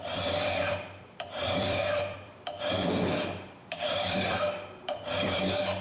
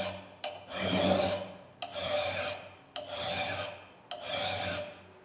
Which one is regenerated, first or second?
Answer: first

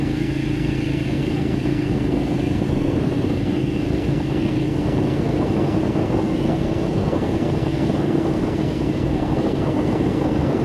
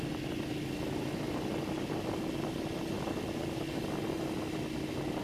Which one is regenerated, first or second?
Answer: first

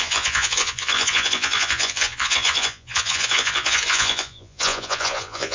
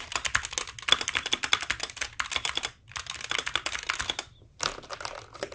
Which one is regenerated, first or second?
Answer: first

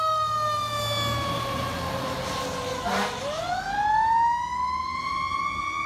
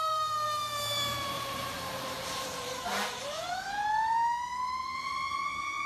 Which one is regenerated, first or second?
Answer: second